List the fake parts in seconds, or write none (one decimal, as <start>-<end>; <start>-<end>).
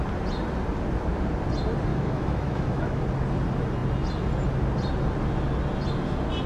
1.9-3.0